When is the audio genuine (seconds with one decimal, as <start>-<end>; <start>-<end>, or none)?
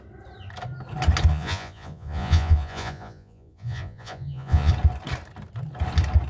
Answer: 0.0-1.3; 4.7-6.3